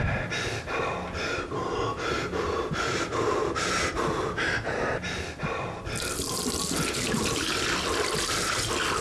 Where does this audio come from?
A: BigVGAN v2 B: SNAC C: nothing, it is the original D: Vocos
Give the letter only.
C